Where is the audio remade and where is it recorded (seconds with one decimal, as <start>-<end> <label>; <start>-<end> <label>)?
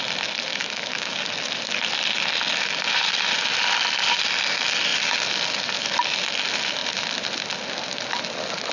0.0-0.5 recorded; 0.5-1.3 remade; 1.3-8.7 recorded